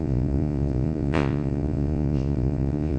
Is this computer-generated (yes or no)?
yes